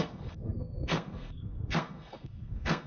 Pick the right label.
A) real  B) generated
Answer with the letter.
B